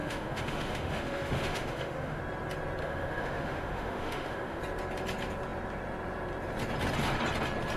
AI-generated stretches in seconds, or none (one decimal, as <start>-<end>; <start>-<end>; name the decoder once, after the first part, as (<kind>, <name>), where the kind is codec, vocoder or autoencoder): 0.0-2.2 (autoencoder, DAC-VAE); 2.8-4.6

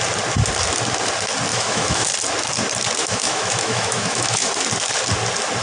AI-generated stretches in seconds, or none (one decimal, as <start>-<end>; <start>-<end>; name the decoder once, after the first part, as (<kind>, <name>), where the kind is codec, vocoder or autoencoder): 1.5-2.1 (autoencoder, DAC-VAE); 3.0-4.5

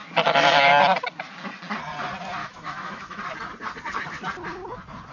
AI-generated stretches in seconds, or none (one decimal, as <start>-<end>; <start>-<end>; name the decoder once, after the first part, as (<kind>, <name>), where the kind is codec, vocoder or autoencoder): 2.4-3.2 (autoencoder, DAC-VAE)

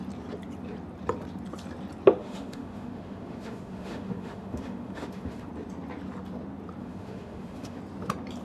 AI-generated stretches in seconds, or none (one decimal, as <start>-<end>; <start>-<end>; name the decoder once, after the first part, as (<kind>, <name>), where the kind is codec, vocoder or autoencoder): 2.2-5.5 (autoencoder, DAC-VAE); 6.8-7.8

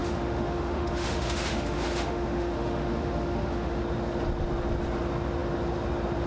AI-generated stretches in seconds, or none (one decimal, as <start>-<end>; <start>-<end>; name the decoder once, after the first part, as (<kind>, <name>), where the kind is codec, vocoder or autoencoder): 0.0-3.8 (autoencoder, DAC-VAE)